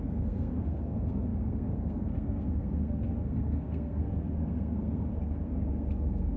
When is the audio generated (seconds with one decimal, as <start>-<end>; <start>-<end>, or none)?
0.0-6.4